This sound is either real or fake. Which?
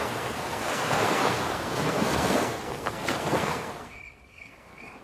fake